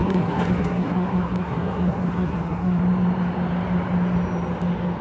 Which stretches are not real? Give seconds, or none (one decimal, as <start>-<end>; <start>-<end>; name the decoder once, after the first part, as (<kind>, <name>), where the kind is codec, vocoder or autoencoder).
0.0-2.8 (codec, SNAC)